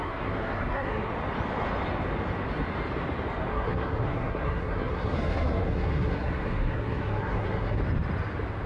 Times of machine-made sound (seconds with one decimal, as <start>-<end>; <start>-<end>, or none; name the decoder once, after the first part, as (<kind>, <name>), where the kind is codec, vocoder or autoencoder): 0.0-1.1 (codec, SNAC); 3.5-7.8